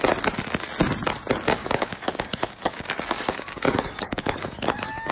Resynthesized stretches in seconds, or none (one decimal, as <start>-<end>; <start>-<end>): 1.6-5.1